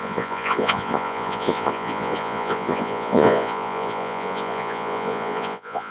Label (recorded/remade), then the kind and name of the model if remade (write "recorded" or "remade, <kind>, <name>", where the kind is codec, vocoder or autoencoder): remade, vocoder, Vocos